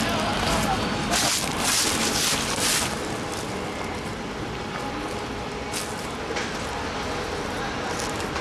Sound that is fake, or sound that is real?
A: real